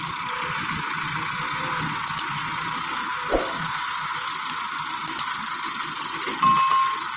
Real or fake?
real